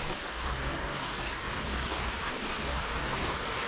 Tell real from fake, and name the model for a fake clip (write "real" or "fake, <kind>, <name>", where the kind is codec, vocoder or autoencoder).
fake, codec, DAC